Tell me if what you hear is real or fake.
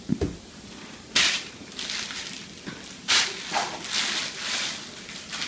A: real